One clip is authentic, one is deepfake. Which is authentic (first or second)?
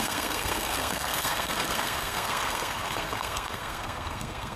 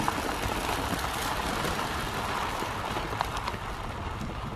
second